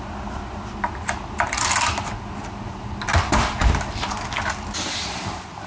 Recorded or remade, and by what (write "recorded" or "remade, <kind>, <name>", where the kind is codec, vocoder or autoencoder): recorded